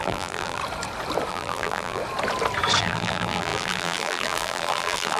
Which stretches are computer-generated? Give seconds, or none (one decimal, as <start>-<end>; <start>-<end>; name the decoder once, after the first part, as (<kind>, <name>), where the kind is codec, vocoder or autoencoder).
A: 0.0-0.6 (vocoder, BigVGAN v2); 1.3-2.0; 2.8-5.2